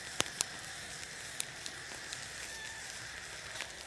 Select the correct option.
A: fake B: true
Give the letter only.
B